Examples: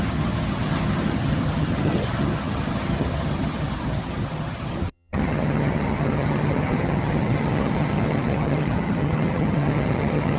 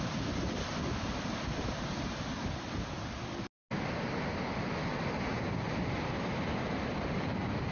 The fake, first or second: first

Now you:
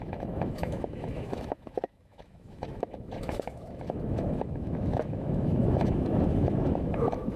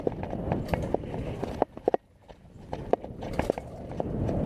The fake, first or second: first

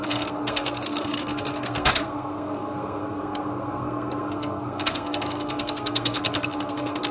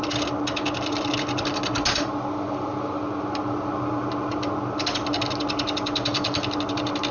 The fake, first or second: first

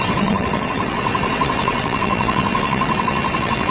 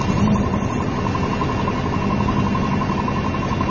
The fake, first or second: first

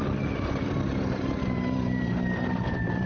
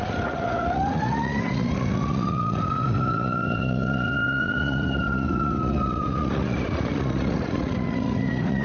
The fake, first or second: second